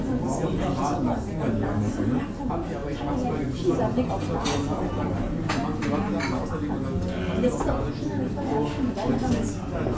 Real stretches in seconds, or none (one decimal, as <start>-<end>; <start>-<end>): 0.0-10.0